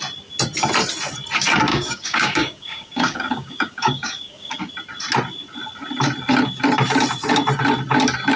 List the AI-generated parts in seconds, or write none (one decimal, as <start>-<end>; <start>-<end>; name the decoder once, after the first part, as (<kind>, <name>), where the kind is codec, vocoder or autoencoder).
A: 1.7-4.7 (codec, DAC)